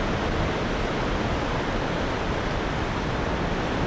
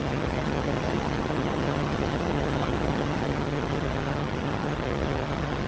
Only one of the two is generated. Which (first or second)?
second